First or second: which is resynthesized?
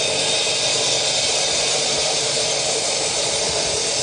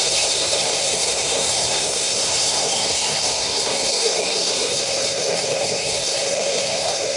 second